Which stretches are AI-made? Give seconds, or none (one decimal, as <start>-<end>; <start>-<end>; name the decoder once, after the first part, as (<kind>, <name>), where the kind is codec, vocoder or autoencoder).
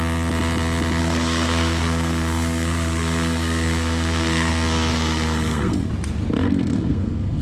1.0-4.5 (codec, SNAC); 4.9-5.9; 6.4-7.4